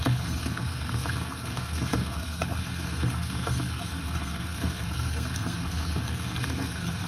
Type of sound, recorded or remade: remade